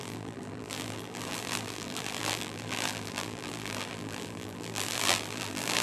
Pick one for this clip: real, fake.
fake